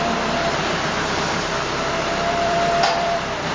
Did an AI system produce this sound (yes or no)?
yes